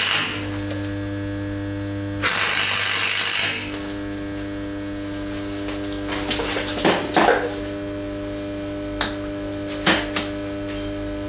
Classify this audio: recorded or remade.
recorded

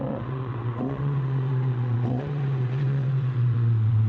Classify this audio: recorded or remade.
remade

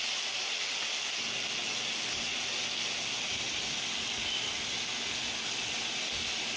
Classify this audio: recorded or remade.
recorded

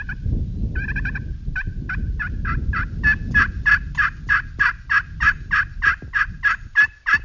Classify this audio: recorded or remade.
recorded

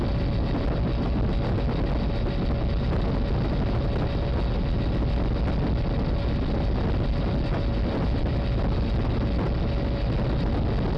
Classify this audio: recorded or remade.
recorded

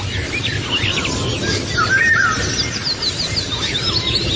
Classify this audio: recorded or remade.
recorded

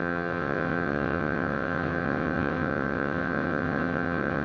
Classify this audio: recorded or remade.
remade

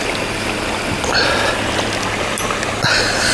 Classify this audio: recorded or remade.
recorded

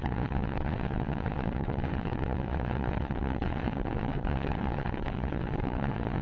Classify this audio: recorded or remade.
remade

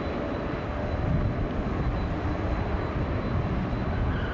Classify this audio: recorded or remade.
recorded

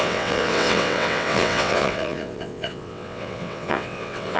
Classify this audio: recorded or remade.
remade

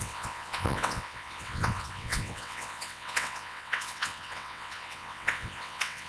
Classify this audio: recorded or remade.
remade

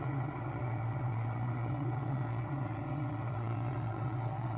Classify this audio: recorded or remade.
remade